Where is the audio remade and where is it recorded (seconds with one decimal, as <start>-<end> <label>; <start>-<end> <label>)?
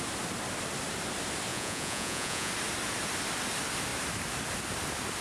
0.0-1.5 recorded; 1.5-2.5 remade; 2.5-5.2 recorded